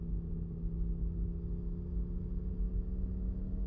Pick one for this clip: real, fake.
real